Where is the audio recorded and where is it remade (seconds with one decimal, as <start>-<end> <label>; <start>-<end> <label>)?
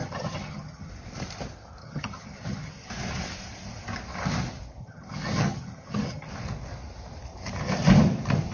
0.0-0.9 remade; 0.9-1.8 recorded; 1.8-2.9 remade; 2.9-4.8 recorded; 4.8-6.3 remade; 6.3-8.5 recorded